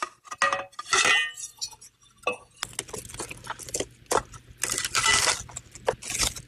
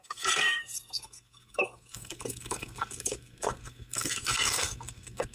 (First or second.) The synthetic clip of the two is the second